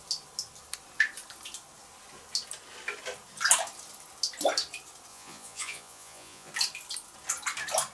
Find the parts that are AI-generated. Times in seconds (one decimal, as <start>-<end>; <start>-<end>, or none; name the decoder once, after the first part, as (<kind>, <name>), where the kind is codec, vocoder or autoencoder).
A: 5.1-6.5 (vocoder, Vocos)

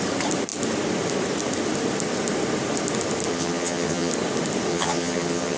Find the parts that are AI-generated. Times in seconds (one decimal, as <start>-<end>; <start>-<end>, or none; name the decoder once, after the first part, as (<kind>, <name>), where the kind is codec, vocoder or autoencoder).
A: 3.3-4.1 (vocoder, HiFi-GAN); 4.7-5.6

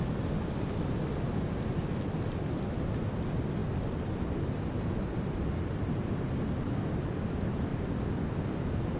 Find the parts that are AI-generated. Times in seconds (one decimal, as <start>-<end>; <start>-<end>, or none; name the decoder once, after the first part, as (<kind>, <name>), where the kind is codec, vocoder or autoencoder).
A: none

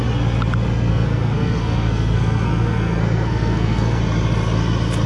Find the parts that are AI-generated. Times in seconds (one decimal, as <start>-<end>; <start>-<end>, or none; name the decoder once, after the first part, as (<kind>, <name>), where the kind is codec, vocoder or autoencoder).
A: 0.9-4.0 (codec, SNAC)

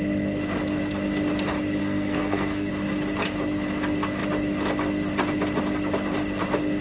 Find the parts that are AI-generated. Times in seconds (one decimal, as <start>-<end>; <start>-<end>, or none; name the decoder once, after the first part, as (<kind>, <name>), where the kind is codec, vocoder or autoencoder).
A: 1.8-2.7 (codec, SNAC)

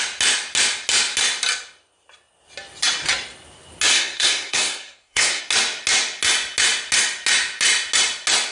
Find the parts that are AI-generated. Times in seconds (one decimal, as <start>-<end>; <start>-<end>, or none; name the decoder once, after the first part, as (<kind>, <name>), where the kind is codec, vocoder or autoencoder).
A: 3.9-5.4 (codec, SNAC)

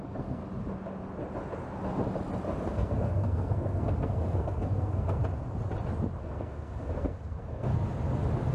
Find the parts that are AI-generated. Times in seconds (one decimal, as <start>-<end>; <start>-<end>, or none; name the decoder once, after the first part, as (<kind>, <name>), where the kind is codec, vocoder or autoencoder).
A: 0.0-0.4 (codec, SNAC); 2.7-5.2; 6.2-7.7

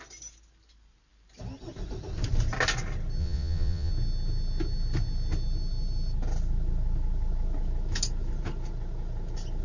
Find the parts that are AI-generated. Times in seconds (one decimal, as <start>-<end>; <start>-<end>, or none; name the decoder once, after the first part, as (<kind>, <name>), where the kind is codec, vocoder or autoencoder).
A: 3.2-3.9 (vocoder, Vocos)